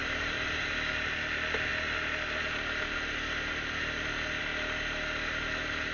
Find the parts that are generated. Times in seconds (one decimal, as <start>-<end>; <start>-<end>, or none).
0.0-0.7